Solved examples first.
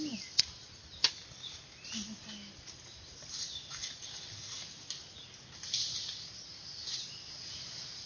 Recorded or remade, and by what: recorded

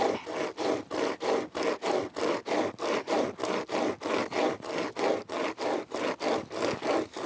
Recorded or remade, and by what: recorded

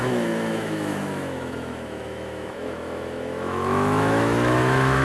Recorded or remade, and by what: remade, autoencoder, DAC-VAE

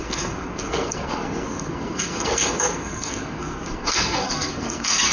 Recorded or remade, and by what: remade, codec, SNAC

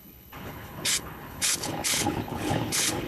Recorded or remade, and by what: remade, codec, HILCodec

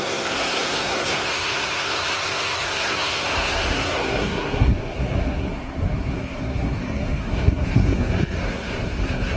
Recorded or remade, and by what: remade, codec, SNAC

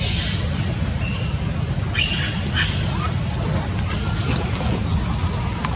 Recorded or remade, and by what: recorded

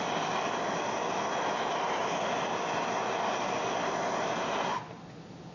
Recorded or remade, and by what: recorded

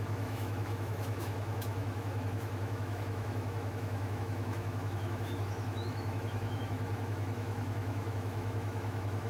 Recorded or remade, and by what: remade, autoencoder, DAC-VAE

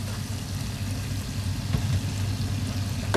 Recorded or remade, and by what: recorded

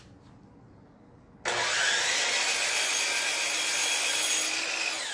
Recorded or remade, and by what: recorded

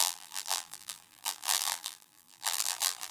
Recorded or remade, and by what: remade, vocoder, BigVGAN v2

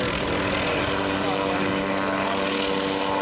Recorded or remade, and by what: recorded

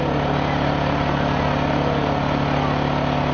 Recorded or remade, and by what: recorded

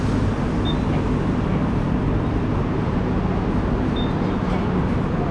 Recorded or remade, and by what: recorded